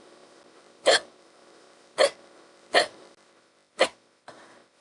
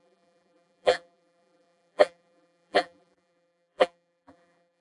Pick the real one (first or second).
first